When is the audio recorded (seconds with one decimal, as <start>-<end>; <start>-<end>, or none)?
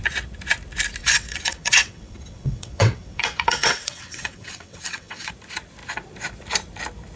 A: 0.0-1.0; 5.3-7.2